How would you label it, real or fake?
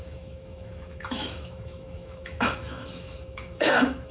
fake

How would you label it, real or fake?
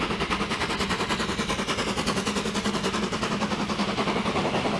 real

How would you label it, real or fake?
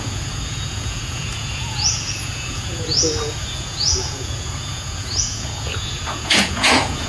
fake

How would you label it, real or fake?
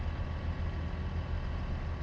real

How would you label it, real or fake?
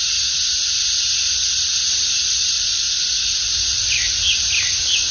real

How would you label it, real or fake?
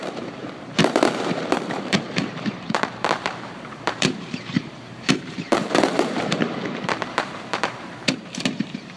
fake